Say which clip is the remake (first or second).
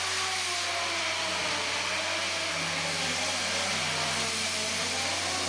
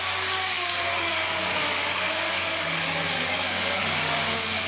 second